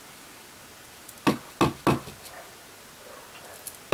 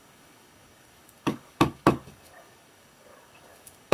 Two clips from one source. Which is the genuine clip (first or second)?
first